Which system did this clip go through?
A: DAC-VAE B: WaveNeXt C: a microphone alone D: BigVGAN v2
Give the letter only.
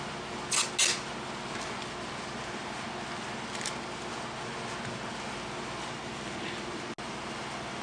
C